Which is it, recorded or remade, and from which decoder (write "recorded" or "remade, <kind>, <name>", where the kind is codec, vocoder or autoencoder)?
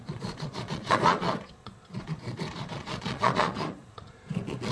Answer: remade, vocoder, Vocos